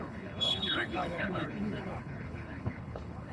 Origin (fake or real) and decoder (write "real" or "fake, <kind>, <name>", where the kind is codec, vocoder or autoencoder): fake, codec, HILCodec